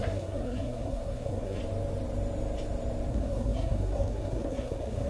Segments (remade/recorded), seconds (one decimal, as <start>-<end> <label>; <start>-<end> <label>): 0.0-1.6 remade; 1.6-3.1 recorded; 3.1-5.1 remade